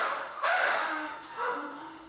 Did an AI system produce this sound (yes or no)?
yes